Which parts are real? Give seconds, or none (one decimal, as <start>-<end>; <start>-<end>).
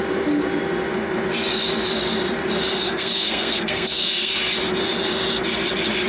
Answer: 0.0-2.7; 4.3-6.1